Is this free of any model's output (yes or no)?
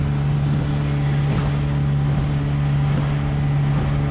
yes